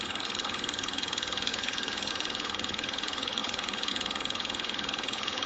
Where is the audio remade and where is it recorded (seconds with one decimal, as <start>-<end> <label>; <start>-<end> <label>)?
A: 0.0-5.5 remade